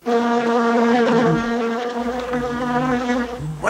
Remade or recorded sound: remade